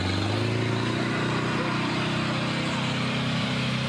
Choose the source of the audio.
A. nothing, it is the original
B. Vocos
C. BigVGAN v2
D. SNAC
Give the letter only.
A